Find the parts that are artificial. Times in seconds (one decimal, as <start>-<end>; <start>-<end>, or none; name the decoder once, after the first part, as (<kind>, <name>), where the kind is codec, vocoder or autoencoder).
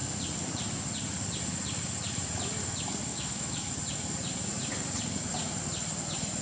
3.1-3.7 (autoencoder, DAC-VAE)